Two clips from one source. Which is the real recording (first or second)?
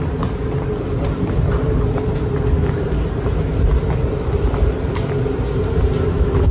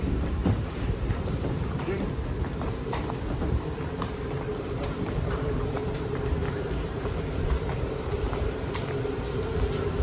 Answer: first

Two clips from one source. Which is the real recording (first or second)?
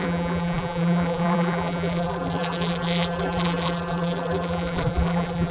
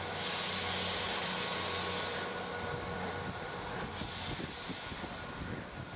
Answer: second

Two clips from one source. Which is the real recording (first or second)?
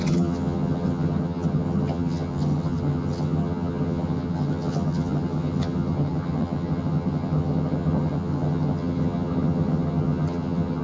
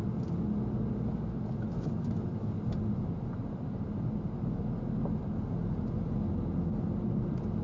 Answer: second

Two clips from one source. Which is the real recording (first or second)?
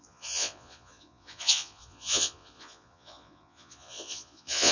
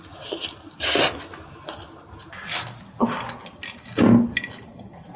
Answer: second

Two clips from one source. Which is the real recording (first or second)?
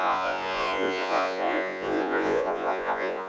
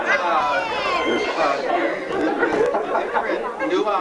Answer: second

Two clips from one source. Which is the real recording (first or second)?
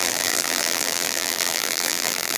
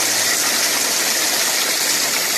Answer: second